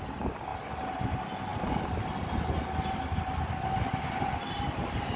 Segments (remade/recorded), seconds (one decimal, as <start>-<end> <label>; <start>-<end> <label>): 0.0-5.2 recorded